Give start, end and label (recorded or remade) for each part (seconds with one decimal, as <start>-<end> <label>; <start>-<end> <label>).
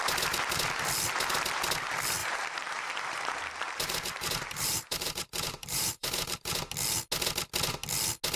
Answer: 0.0-2.2 recorded; 2.2-6.6 remade; 6.6-8.4 recorded